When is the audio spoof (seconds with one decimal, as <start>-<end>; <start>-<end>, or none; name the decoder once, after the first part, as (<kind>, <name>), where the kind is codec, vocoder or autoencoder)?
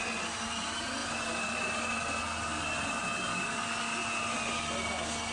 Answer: none